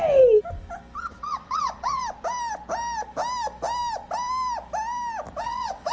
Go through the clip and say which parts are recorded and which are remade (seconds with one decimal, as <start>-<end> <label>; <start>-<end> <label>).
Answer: 0.0-1.0 recorded; 1.0-2.0 remade; 2.0-5.4 recorded; 5.4-5.9 remade

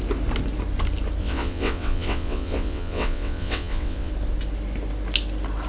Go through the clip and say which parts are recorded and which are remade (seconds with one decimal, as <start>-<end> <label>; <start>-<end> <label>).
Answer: 0.0-1.2 recorded; 1.2-4.1 remade; 4.1-5.7 recorded

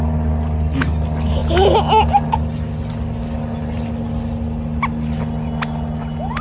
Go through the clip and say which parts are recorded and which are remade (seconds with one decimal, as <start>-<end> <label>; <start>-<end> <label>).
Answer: 0.0-6.4 recorded

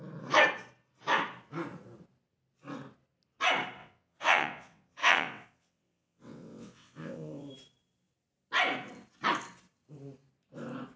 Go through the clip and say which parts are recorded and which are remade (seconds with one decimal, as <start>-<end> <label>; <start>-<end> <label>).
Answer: 0.0-3.8 recorded; 3.8-7.5 remade; 7.5-11.0 recorded

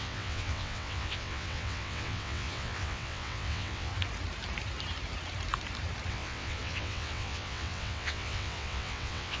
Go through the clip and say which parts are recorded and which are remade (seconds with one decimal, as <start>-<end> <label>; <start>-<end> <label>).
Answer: 0.0-3.9 remade; 3.9-6.1 recorded; 6.1-9.4 remade

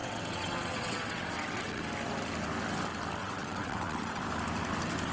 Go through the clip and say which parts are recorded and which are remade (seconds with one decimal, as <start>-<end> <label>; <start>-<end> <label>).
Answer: 0.0-1.8 remade; 1.8-3.2 recorded; 3.2-4.2 remade; 4.2-5.1 recorded